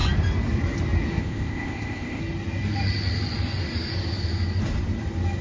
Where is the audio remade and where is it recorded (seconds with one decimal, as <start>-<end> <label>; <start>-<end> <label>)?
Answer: 0.0-1.2 recorded; 1.2-2.2 remade; 2.2-5.4 recorded